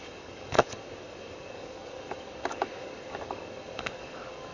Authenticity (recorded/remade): remade